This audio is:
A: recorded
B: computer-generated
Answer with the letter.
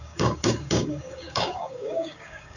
B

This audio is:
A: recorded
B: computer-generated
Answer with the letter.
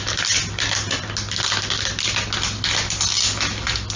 A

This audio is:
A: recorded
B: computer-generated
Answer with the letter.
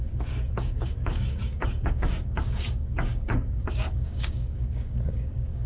B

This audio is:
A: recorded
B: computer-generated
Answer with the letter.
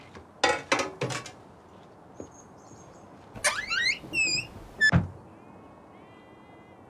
A